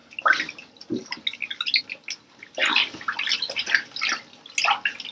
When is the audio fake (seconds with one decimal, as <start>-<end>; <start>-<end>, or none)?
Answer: none